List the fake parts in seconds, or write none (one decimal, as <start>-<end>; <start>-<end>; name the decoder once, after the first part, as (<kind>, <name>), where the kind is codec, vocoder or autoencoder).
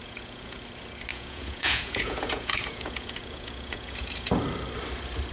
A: 0.0-0.6 (vocoder, Vocos); 1.1-4.3